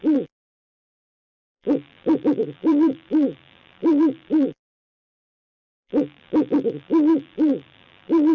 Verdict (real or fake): fake